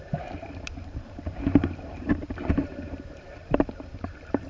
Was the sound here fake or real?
fake